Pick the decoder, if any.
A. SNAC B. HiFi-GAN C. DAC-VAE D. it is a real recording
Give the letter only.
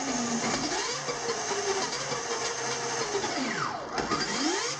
D